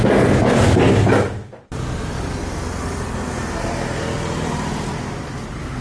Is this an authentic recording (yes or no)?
yes